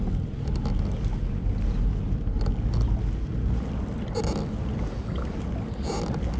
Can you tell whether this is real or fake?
real